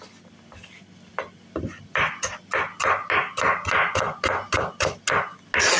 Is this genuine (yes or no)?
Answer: yes